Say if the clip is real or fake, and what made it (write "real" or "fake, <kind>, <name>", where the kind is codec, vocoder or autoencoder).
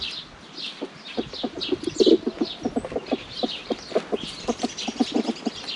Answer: real